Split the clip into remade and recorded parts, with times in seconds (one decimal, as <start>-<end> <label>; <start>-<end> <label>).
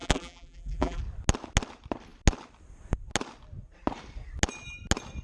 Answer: 0.0-1.0 remade; 1.0-5.2 recorded